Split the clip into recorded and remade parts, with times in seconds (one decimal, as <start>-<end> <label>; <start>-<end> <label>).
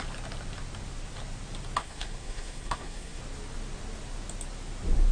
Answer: 0.0-1.8 recorded; 1.8-3.2 remade; 3.2-5.1 recorded